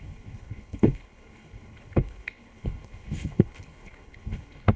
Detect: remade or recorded remade